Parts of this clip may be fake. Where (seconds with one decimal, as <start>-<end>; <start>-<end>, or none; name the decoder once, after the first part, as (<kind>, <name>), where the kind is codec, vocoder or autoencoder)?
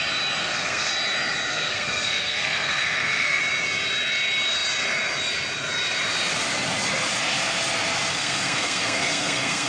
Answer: 0.4-0.9 (codec, SNAC); 1.5-3.4; 8.1-9.7